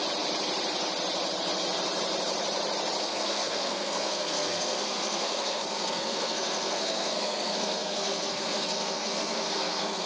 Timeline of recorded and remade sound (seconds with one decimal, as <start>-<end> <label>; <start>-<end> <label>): 0.0-3.0 recorded; 3.0-10.1 remade